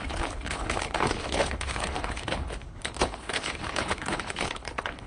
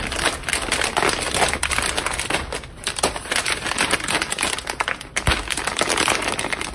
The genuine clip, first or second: second